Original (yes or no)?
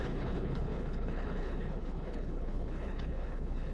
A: no